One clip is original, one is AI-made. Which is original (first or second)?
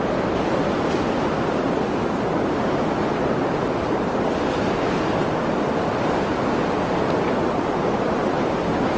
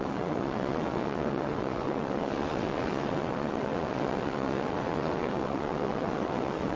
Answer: first